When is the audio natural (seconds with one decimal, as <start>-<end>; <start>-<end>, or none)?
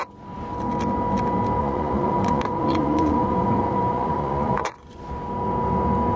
0.0-1.6; 5.0-6.2